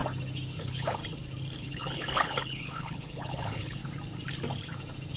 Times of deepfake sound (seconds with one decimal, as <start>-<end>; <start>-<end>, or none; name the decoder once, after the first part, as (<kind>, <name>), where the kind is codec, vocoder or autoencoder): 0.6-1.0 (codec, HILCodec); 1.6-3.8